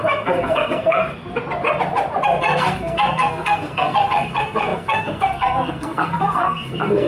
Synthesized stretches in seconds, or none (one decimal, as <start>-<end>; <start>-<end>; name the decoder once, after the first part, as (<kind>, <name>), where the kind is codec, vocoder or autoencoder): 0.0-1.0 (codec, SNAC); 2.4-7.1